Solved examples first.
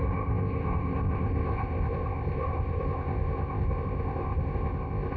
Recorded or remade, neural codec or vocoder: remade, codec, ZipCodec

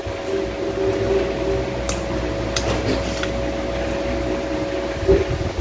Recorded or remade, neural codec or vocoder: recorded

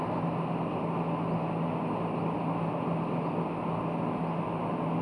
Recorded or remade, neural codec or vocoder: recorded